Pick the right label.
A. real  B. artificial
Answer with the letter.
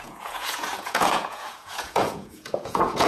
B